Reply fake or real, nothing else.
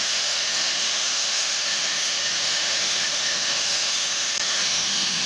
fake